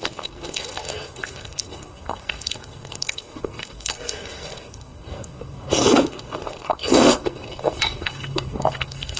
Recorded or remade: remade